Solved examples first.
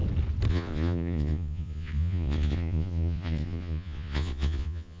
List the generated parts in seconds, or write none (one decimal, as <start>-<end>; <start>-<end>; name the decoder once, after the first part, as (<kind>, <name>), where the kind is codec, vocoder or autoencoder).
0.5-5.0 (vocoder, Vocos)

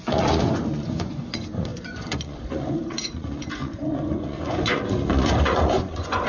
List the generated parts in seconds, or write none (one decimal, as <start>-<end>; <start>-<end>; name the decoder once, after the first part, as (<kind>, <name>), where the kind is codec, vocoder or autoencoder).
0.0-6.3 (vocoder, Vocos)

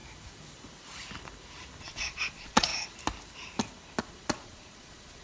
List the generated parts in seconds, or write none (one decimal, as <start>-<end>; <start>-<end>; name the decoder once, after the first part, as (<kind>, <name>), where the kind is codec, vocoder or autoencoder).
1.8-2.7 (vocoder, Vocos); 4.0-5.2